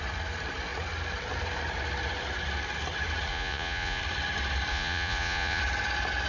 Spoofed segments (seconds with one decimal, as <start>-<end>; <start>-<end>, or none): 3.3-4.0; 4.7-5.6

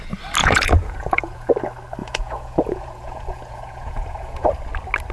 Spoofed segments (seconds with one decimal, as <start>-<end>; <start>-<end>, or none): 0.4-1.5; 2.0-4.5